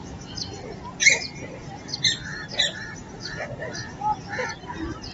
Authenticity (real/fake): real